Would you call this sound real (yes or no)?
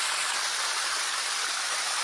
yes